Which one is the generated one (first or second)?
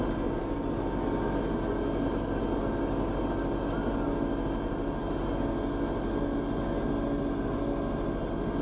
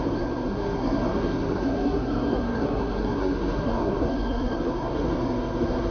second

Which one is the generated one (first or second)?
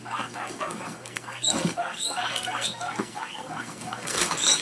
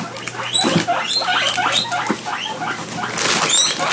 first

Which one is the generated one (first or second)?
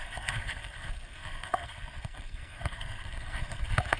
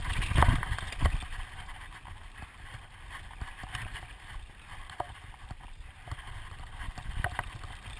first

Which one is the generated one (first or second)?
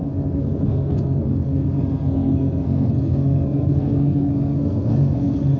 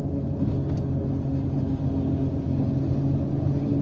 first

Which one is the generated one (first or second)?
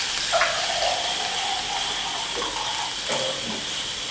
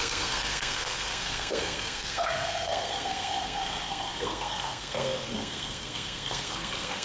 second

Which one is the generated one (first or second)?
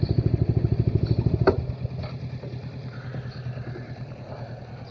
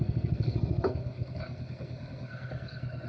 second